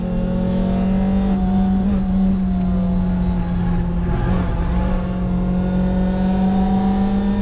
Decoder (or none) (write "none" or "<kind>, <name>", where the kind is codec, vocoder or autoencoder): none